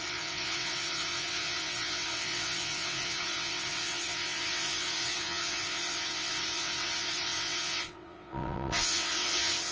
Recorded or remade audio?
remade